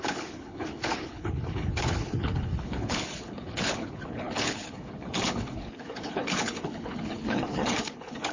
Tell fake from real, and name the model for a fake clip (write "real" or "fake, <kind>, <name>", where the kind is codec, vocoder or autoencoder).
fake, codec, HILCodec